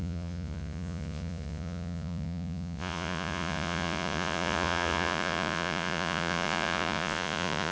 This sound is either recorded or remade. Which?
remade